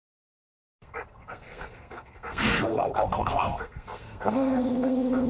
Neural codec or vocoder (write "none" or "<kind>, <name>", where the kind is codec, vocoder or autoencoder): codec, SNAC